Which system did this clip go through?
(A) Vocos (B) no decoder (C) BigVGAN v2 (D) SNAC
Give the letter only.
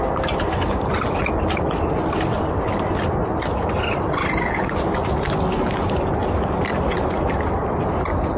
B